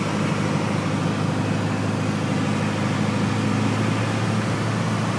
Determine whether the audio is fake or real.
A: real